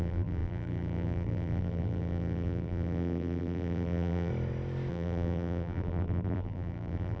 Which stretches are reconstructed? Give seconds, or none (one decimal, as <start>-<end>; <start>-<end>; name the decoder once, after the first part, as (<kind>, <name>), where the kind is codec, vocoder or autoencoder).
0.0-4.3 (vocoder, BigVGAN v2); 4.9-7.2